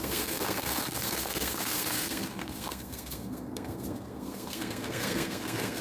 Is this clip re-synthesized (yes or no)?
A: yes